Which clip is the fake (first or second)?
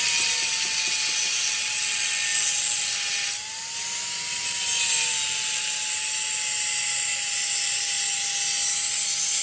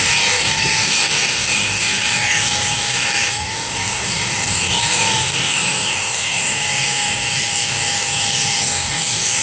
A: second